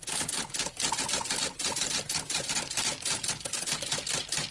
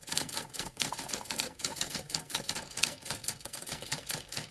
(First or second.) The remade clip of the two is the second